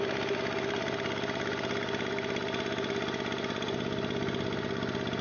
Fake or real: real